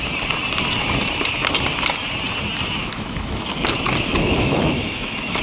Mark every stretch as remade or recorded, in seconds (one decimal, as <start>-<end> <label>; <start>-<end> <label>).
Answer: 0.0-2.8 recorded; 2.8-3.5 remade; 3.5-4.1 recorded; 4.1-5.4 remade